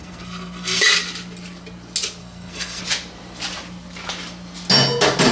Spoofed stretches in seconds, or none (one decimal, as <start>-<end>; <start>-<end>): 0.0-0.8; 2.2-2.8